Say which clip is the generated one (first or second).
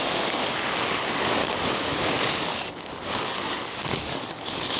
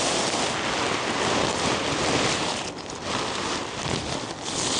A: first